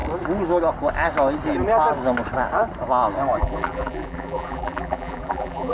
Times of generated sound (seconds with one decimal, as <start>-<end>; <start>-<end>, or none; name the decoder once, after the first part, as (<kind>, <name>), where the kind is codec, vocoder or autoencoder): 3.4-5.7 (vocoder, BigVGAN v2)